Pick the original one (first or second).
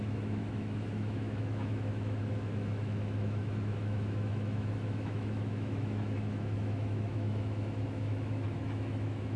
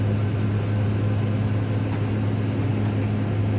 second